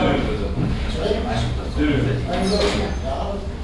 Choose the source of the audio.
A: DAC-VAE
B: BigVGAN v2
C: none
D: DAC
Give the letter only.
C